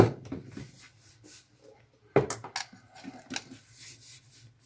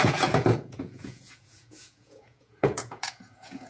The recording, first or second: first